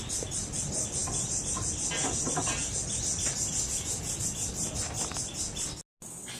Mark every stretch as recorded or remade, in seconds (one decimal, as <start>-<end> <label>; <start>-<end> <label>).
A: 0.0-6.4 recorded